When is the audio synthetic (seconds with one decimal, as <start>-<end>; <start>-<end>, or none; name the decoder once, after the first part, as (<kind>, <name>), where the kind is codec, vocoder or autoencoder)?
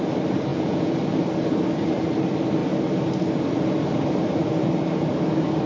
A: 0.5-1.2 (vocoder, Vocos)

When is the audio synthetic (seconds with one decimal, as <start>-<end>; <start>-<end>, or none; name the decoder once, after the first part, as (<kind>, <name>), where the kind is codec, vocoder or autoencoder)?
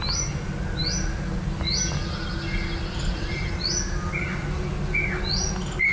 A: none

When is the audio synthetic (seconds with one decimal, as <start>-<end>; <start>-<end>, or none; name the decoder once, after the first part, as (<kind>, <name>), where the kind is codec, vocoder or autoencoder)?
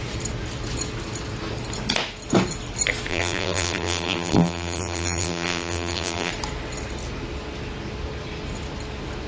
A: 3.1-6.3 (vocoder, BigVGAN v2)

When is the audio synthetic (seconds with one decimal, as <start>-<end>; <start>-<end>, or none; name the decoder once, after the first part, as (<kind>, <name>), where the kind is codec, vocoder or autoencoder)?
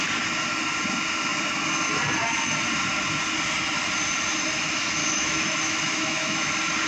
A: 5.0-6.5 (autoencoder, DAC-VAE)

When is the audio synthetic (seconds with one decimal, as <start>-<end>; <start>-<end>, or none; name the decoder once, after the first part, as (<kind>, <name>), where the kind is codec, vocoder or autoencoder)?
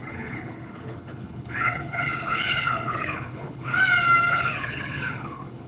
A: 0.0-3.7 (codec, HILCodec); 4.3-5.7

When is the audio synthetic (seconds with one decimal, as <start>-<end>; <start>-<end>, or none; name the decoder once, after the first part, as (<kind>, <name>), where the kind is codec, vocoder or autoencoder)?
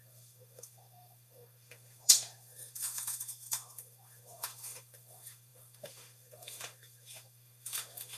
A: 0.0-8.2 (autoencoder, DAC-VAE)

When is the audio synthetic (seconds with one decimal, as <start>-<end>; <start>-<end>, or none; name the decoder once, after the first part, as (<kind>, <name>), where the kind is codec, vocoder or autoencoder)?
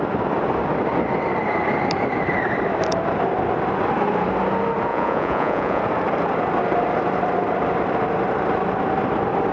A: 4.9-5.8 (vocoder, Vocos)